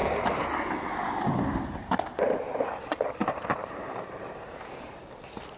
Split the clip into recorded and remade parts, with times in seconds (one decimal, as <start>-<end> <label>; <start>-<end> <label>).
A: 0.0-3.2 recorded; 3.2-5.0 remade; 5.0-5.6 recorded